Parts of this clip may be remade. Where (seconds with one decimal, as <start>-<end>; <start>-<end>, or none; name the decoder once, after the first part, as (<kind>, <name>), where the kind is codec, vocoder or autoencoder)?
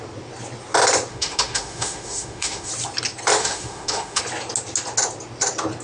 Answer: 1.1-2.7 (autoencoder, DAC-VAE); 3.4-4.2